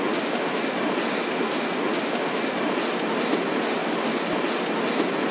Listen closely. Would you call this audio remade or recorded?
recorded